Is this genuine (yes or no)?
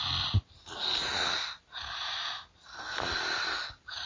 yes